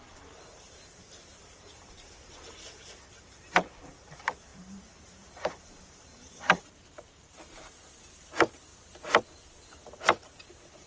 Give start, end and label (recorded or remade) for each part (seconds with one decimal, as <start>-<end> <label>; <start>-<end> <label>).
0.0-8.7 remade; 8.7-9.5 recorded; 9.5-10.9 remade